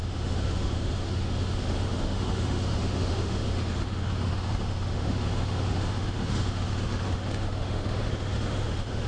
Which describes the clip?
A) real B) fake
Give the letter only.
B